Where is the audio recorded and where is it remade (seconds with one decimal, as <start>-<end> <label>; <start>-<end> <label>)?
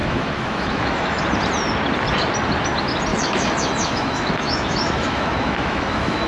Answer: 0.0-1.2 remade; 1.2-3.1 recorded; 3.1-6.3 remade